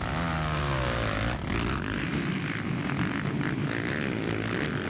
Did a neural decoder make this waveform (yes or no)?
no